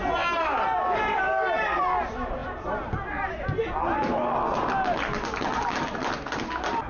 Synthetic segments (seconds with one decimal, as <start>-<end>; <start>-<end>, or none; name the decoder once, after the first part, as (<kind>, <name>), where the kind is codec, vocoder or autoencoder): none